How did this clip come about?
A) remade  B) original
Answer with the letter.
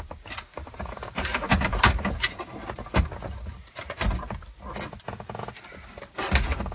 B